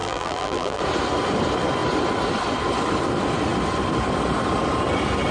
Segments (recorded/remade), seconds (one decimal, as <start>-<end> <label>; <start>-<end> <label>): 0.0-0.8 remade; 0.8-5.3 recorded